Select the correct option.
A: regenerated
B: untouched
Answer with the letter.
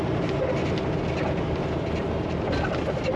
B